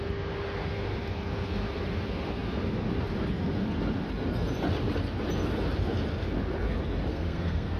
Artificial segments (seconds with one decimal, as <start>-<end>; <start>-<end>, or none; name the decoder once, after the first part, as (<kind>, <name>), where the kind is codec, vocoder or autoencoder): 7.1-7.8 (codec, SNAC)

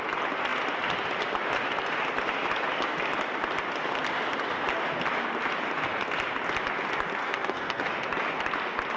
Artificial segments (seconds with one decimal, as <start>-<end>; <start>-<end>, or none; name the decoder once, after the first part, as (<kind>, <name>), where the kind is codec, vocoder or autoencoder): 7.2-7.8 (codec, SNAC)

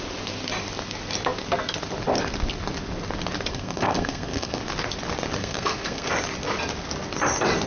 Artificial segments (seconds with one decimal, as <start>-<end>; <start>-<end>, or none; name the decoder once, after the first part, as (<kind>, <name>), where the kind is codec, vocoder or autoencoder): 3.5-4.6 (codec, SNAC); 5.4-6.1

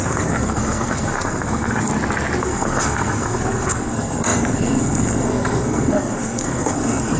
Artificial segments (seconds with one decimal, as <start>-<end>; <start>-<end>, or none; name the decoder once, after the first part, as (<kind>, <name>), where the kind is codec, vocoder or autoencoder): 0.0-1.9 (codec, SNAC); 2.4-7.2

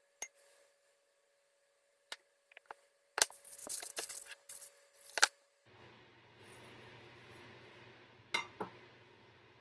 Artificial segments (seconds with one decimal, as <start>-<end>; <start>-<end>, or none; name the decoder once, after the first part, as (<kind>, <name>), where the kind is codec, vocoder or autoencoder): none

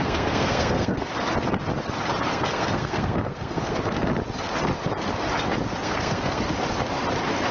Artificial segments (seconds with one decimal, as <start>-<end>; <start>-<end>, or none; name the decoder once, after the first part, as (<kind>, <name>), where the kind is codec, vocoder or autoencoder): 0.0-1.1 (codec, SNAC); 2.3-4.1; 5.8-6.4

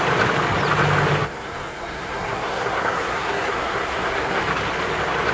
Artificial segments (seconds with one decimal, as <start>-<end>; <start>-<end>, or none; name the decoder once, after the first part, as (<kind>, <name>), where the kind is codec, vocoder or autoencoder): 1.2-4.4 (codec, SNAC)

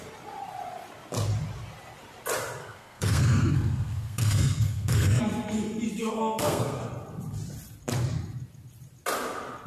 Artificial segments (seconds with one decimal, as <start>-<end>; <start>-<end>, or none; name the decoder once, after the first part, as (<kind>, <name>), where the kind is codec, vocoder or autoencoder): 2.6-5.2 (codec, SNAC); 6.0-6.8